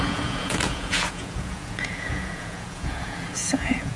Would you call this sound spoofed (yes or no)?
yes